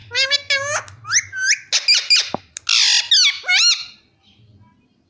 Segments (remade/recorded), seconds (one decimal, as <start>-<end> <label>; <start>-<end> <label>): 0.0-5.1 recorded